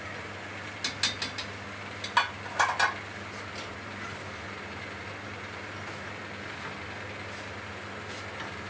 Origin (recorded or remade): recorded